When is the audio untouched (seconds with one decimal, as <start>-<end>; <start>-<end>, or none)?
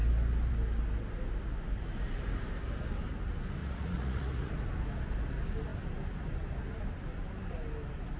0.0-3.6; 4.5-8.2